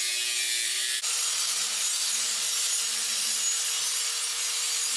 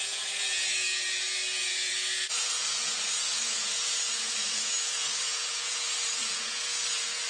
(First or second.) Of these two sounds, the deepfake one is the second